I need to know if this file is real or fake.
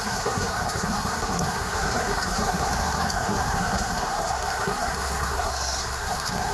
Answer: fake